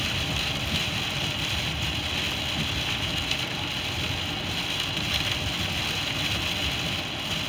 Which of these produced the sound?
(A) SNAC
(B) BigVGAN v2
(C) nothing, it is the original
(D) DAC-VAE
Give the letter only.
C